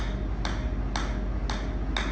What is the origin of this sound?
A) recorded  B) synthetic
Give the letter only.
A